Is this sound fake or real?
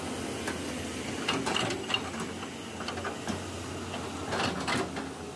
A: real